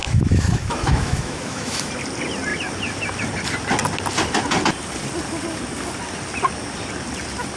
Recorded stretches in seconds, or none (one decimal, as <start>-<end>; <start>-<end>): 1.9-7.6

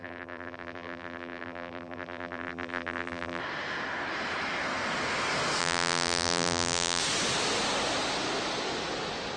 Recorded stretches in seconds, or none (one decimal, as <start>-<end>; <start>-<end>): 3.4-5.6; 7.0-9.4

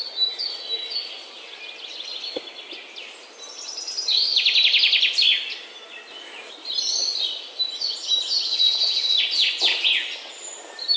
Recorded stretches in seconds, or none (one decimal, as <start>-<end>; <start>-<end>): 0.0-11.0

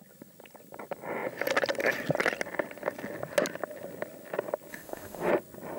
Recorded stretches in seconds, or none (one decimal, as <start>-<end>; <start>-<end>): 0.0-4.7; 5.3-5.8

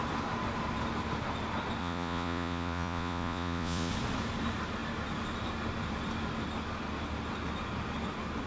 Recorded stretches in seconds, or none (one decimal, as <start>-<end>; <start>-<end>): 0.0-1.8; 3.9-8.5

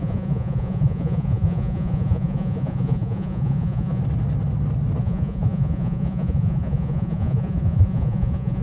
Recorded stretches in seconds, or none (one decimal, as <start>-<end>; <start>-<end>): 4.0-5.0

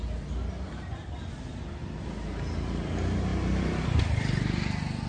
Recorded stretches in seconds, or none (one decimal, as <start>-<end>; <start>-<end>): 0.0-5.1

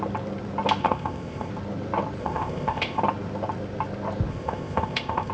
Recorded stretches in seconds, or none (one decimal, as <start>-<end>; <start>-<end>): 0.0-0.8; 1.5-2.2; 3.0-4.3